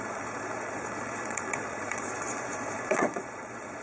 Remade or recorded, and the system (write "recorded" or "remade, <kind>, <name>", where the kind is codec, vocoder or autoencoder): remade, vocoder, Vocos